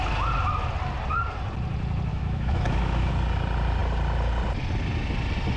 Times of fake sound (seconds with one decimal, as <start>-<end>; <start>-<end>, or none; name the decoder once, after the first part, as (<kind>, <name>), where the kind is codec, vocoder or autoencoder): 2.1-3.1 (autoencoder, DAC-VAE)